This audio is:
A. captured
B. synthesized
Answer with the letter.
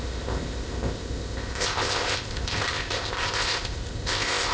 B